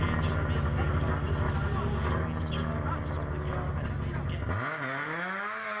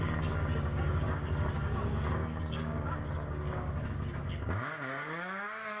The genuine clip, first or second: first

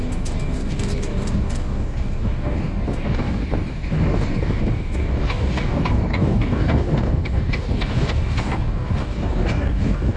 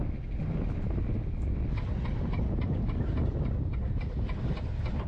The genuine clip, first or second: second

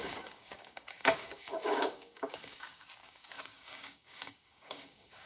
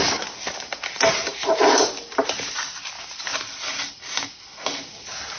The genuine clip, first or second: second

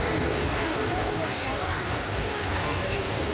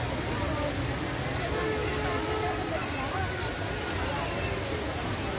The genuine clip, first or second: second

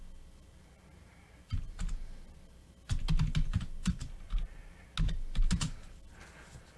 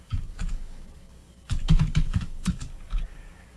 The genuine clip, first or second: first